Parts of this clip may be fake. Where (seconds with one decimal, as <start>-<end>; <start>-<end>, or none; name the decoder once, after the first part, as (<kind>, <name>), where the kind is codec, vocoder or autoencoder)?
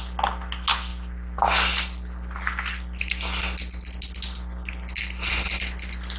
none